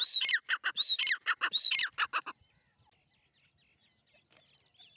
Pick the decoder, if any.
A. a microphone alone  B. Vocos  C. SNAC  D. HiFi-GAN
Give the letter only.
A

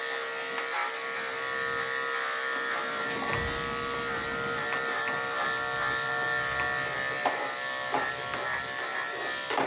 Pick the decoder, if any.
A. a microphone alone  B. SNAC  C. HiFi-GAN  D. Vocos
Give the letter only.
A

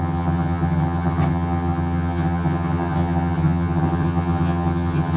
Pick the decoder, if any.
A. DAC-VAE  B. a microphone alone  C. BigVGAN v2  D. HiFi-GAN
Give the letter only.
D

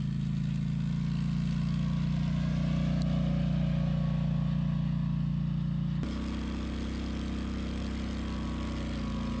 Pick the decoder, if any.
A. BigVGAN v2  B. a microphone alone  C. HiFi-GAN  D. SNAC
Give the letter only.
B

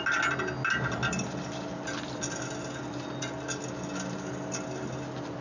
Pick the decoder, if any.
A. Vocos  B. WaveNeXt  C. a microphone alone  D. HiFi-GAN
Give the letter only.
C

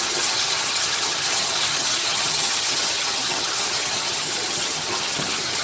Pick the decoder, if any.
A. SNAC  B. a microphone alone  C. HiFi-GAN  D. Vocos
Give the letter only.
C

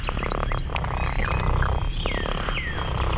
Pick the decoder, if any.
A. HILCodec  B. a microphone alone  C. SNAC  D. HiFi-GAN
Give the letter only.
B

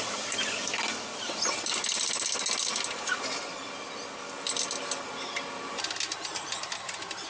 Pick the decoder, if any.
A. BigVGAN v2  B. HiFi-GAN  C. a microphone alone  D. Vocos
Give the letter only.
C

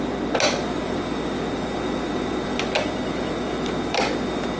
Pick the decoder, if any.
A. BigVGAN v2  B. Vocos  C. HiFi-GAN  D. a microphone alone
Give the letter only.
D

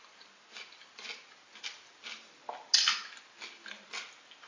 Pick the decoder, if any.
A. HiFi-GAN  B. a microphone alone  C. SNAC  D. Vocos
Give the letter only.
B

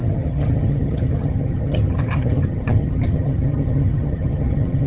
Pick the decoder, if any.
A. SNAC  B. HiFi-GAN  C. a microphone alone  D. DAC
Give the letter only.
B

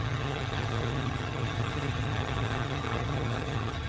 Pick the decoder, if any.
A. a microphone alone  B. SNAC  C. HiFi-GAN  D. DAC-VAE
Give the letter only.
C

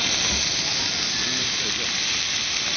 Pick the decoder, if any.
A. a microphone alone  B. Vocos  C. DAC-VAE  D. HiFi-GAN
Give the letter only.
A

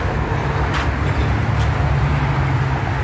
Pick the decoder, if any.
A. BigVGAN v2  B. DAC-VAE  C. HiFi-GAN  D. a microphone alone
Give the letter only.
D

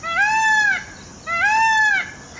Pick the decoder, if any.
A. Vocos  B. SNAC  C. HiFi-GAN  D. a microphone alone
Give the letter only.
D